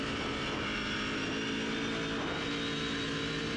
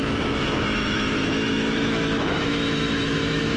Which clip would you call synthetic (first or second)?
second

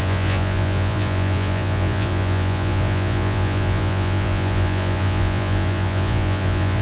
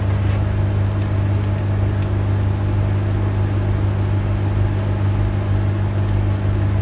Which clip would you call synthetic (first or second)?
first